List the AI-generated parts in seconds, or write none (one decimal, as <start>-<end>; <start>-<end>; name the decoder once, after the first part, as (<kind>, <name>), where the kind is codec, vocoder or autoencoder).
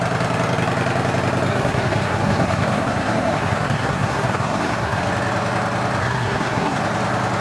1.5-5.0 (codec, SNAC); 6.0-6.8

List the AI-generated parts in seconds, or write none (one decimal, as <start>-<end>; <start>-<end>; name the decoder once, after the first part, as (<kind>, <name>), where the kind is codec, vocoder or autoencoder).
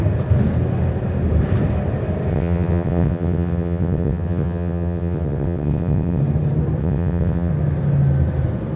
2.3-6.2 (vocoder, WaveNeXt); 6.8-7.5